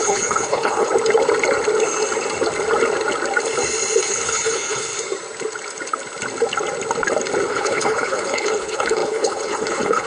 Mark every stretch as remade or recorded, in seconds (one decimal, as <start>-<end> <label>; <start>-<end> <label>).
0.0-0.9 remade; 0.9-4.0 recorded; 4.0-4.9 remade; 4.9-7.5 recorded; 7.5-10.1 remade